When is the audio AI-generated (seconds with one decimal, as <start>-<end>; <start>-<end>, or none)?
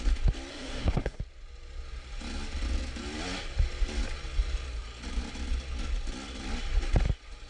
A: 0.5-1.2